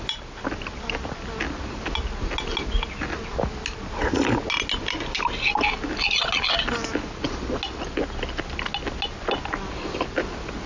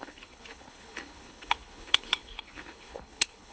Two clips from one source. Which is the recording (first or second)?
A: first